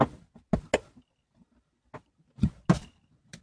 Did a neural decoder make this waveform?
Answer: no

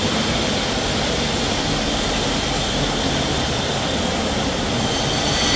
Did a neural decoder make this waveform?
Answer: no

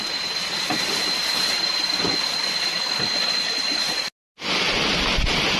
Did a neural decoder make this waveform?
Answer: no